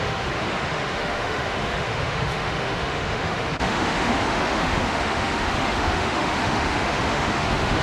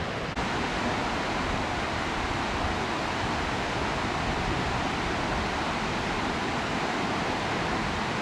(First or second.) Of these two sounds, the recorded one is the second